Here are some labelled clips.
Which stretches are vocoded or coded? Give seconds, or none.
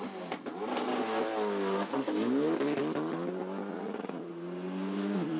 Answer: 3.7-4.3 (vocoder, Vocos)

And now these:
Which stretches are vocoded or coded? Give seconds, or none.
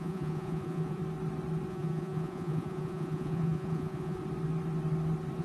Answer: 0.0-1.0 (vocoder, Vocos); 1.7-4.2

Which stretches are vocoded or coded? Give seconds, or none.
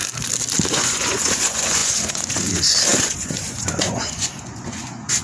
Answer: 0.7-5.2 (vocoder, Vocos)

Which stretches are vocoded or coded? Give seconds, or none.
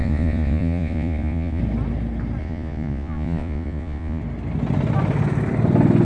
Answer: 0.0-1.6 (vocoder, Vocos); 2.4-4.2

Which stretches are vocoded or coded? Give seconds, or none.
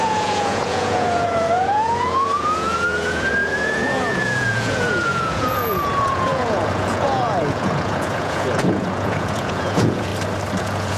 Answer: 0.0-10.1 (vocoder, Vocos); 10.6-11.0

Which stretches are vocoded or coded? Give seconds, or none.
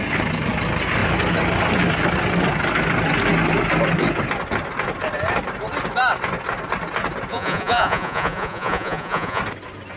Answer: 7.3-9.4 (vocoder, Vocos)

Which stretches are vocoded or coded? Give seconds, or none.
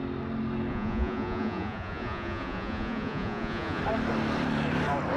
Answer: 0.7-3.8 (vocoder, Vocos)